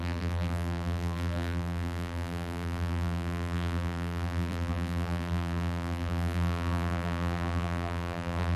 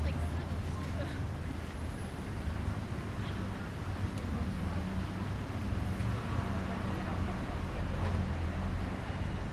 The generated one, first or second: first